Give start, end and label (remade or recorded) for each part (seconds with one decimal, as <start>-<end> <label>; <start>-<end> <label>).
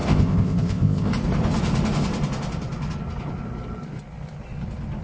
0.0-1.1 remade; 1.1-5.0 recorded